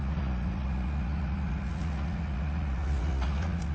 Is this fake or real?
fake